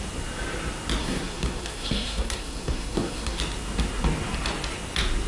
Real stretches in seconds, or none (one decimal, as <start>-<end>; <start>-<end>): 0.0-1.0; 3.4-5.3